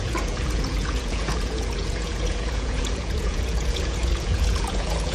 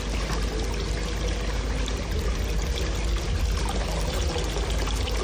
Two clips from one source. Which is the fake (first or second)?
first